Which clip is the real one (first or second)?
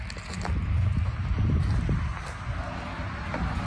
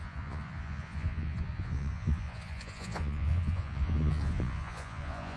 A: first